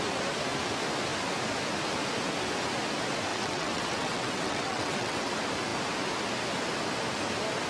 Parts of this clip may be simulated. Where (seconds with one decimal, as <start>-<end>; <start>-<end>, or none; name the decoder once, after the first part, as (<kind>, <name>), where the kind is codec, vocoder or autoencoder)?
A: 3.3-5.3 (vocoder, WaveNeXt)